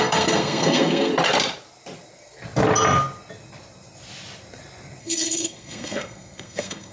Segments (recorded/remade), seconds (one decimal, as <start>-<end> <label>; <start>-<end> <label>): 0.0-1.1 remade; 1.1-5.0 recorded; 5.0-6.9 remade